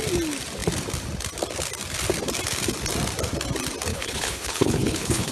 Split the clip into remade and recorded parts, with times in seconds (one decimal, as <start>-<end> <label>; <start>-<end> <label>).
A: 0.0-3.9 recorded; 3.9-5.3 remade